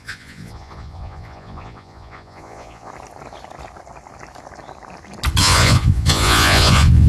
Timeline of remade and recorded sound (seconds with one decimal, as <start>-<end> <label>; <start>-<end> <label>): 0.0-2.9 remade; 2.9-5.4 recorded; 5.4-7.1 remade

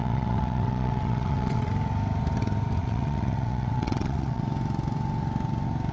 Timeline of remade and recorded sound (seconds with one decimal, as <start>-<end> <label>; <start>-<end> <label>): 0.0-1.7 remade; 1.7-2.8 recorded; 2.8-4.4 remade; 4.4-5.9 recorded

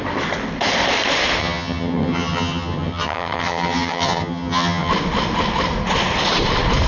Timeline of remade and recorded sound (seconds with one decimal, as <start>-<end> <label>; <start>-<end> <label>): 0.0-1.4 recorded; 1.4-4.9 remade; 4.9-6.9 recorded

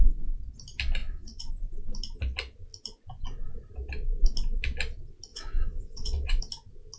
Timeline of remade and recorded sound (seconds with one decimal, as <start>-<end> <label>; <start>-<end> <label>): 0.0-1.0 recorded; 1.0-1.5 remade; 1.5-5.3 recorded; 5.3-6.4 remade; 6.4-7.0 recorded

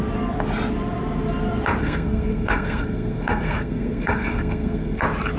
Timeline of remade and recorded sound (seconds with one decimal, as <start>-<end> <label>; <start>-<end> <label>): 0.0-1.8 recorded; 1.8-5.0 remade; 5.0-5.4 recorded

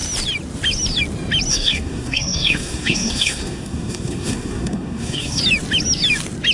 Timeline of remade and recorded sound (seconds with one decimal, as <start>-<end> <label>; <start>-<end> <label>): 0.0-1.5 recorded; 1.5-5.4 remade; 5.4-6.5 recorded

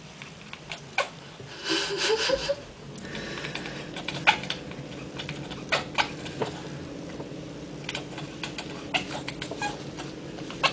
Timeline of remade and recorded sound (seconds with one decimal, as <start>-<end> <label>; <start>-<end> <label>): 0.0-10.7 recorded

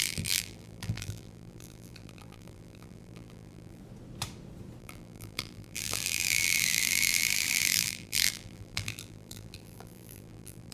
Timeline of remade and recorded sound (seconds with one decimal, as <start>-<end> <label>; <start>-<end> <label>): 0.0-3.8 remade; 3.8-4.8 recorded; 4.8-10.7 remade